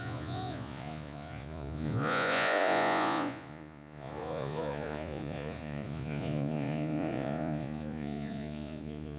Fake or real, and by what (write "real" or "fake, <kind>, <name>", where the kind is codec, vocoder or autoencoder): fake, vocoder, Vocos